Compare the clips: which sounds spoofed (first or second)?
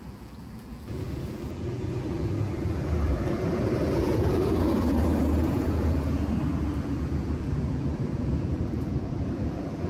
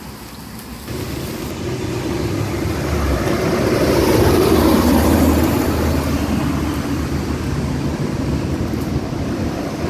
first